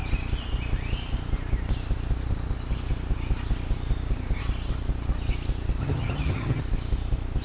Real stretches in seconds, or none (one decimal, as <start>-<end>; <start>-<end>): 0.0-5.8; 6.6-7.4